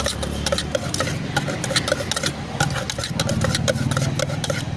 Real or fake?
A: real